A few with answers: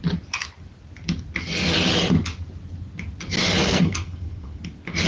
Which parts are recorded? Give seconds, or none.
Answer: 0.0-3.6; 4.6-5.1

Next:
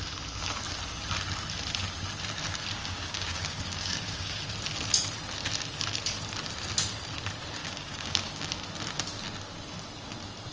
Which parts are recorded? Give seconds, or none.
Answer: 0.0-2.8; 4.4-7.6; 8.5-10.5

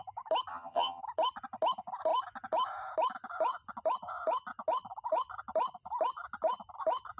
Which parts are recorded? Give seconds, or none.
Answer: 0.0-0.5; 1.0-7.2